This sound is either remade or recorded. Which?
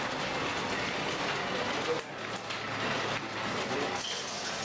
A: recorded